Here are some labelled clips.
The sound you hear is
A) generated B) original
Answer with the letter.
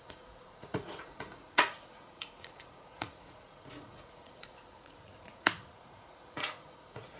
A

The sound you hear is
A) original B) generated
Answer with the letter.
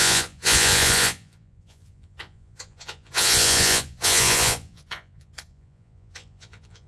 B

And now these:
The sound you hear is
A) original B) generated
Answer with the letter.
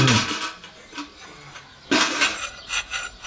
A